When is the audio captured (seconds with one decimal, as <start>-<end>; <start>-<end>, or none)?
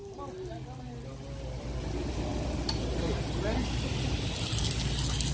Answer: 0.0-5.3